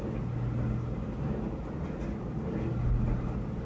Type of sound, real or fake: real